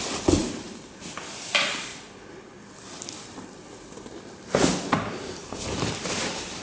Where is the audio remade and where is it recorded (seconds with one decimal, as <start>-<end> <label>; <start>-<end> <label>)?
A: 0.0-6.6 recorded